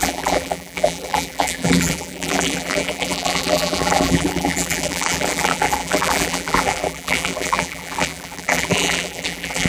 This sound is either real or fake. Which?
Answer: fake